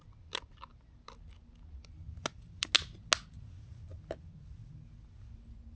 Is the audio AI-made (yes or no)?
no